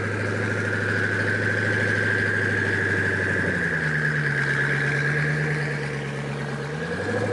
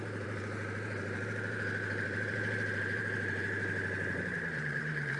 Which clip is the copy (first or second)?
second